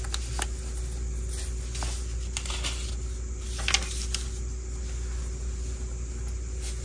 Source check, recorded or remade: recorded